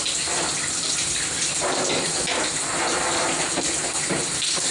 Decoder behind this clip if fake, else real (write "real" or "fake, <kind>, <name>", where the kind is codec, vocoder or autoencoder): real